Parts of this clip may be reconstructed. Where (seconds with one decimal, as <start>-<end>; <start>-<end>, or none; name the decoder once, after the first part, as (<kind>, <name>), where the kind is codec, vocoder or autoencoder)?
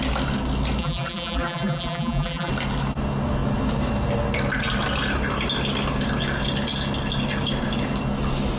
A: 0.8-2.5 (vocoder, BigVGAN v2)